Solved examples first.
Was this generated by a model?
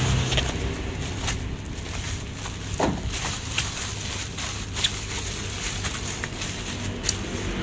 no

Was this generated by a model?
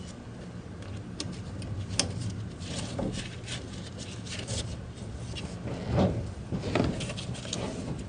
no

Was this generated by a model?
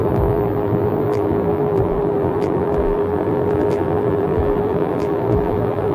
yes